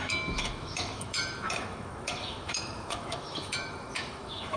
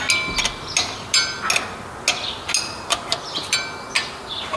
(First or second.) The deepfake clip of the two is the first